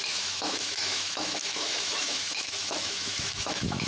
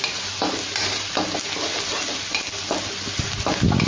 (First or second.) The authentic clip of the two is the second